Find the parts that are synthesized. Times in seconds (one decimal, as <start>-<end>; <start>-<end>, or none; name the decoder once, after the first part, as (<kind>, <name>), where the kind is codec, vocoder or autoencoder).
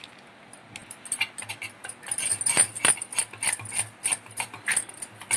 none